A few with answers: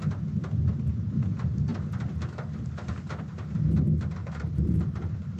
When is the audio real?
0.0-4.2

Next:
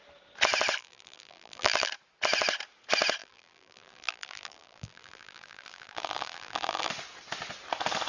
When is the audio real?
0.0-0.8; 1.9-3.2; 6.9-8.1

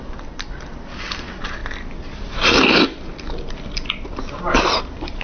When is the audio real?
1.6-4.1

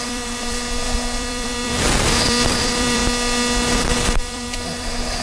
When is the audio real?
3.0-3.7

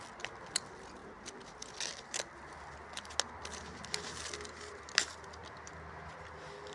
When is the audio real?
0.0-6.7

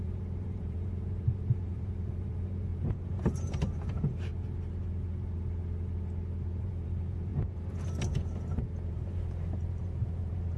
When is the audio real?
4.3-6.6; 7.3-8.9

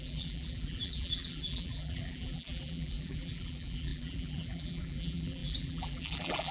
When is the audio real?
none